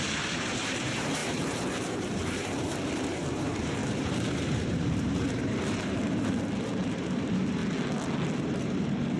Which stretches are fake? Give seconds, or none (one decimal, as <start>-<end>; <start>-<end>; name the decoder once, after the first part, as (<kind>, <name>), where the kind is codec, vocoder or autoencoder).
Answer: 0.0-7.6 (vocoder, BigVGAN v2); 8.4-9.2

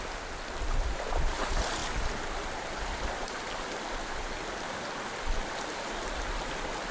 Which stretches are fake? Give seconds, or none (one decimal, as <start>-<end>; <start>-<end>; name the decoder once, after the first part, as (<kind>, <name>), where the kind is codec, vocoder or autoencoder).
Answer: 1.8-5.5 (vocoder, BigVGAN v2)

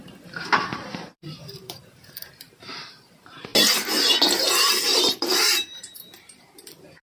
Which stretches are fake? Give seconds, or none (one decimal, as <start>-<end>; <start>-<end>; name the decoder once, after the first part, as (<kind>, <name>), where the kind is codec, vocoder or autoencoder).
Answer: 0.0-3.5 (vocoder, BigVGAN v2); 4.8-7.1

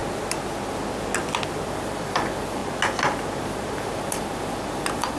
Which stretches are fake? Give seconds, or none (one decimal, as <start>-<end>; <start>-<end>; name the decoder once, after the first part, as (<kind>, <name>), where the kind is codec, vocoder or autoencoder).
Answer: 1.6-2.6 (vocoder, BigVGAN v2); 3.4-5.2

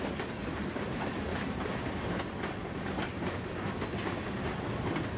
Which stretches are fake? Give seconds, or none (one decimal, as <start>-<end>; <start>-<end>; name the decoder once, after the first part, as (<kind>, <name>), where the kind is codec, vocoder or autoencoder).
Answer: 0.4-2.2 (vocoder, BigVGAN v2)

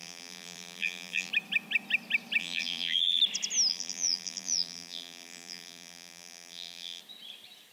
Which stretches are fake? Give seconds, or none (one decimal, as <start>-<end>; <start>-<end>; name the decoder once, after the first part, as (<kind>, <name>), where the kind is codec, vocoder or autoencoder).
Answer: 0.0-1.3 (vocoder, BigVGAN v2); 2.4-3.2; 3.7-7.0

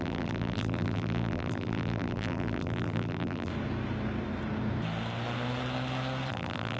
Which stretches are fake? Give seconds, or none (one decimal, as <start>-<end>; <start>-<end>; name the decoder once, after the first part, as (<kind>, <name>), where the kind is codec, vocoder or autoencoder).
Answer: 0.0-3.5 (vocoder, BigVGAN v2); 6.3-6.8